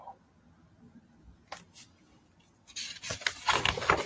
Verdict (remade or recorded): recorded